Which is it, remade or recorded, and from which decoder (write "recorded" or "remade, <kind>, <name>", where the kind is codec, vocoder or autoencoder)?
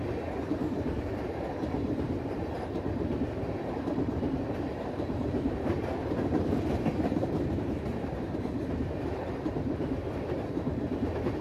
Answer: remade, vocoder, BigVGAN v2